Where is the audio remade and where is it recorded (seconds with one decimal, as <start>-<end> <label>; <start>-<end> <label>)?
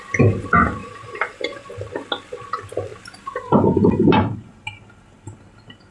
0.0-0.8 recorded; 0.8-1.7 remade; 1.7-5.9 recorded